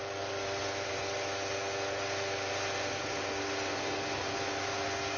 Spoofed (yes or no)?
no